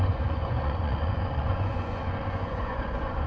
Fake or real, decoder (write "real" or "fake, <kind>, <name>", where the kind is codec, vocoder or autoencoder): fake, vocoder, Vocos